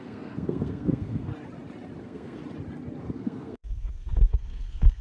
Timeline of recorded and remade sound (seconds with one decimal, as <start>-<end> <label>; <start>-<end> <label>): 0.0-1.3 remade; 1.3-2.0 recorded; 2.0-2.4 remade; 2.4-3.0 recorded; 3.0-5.0 remade